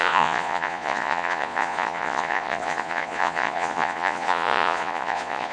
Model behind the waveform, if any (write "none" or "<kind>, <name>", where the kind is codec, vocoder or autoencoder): vocoder, Vocos